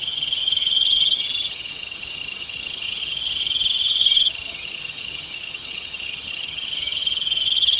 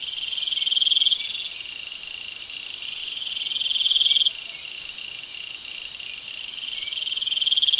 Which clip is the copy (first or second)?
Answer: first